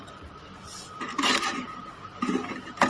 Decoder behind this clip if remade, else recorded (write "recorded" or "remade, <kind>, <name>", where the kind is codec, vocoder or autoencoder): recorded